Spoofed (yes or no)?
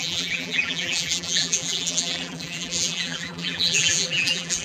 yes